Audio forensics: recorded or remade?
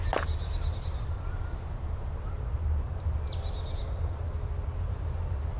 recorded